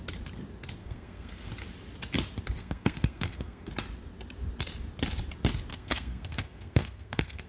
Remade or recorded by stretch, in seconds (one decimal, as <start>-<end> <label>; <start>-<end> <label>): 0.0-0.8 recorded; 0.8-1.5 remade; 1.5-2.6 recorded; 2.6-3.7 remade; 3.7-5.7 recorded; 5.7-7.5 remade